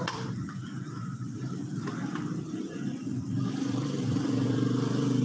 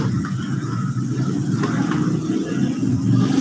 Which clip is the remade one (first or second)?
first